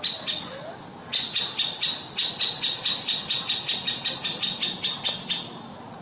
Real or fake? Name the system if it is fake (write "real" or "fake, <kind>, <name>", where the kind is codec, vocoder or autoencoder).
real